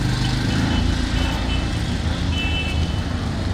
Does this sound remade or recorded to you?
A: recorded